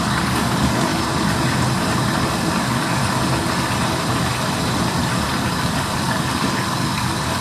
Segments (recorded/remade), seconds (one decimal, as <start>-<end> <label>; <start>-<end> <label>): 0.0-0.9 remade; 0.9-2.6 recorded; 2.6-3.0 remade; 3.0-5.1 recorded; 5.1-7.4 remade